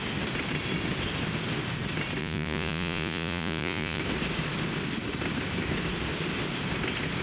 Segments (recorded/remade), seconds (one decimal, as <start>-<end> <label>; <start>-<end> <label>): 0.0-2.2 recorded; 2.2-4.0 remade; 4.0-7.2 recorded